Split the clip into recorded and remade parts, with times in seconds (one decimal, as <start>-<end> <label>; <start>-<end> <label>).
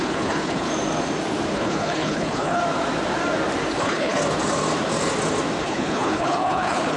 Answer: 0.0-0.7 remade; 0.7-1.5 recorded; 1.5-2.6 remade; 2.6-3.8 recorded; 3.8-4.2 remade; 4.2-5.6 recorded; 5.6-7.0 remade